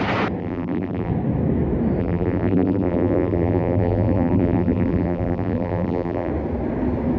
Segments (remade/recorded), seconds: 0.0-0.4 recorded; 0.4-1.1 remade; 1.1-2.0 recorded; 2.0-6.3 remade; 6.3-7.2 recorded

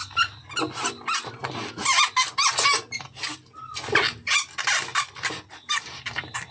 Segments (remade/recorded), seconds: 0.0-6.5 recorded

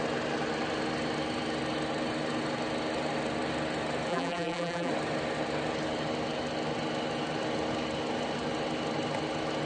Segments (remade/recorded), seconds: 0.0-4.1 recorded; 4.1-4.9 remade; 4.9-9.7 recorded

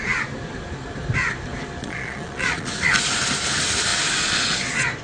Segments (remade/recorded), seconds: 0.0-1.8 recorded; 1.8-2.7 remade; 2.7-5.0 recorded

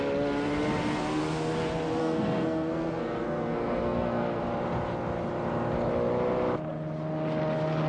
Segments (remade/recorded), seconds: 0.0-2.0 recorded; 2.0-4.4 remade; 4.4-7.9 recorded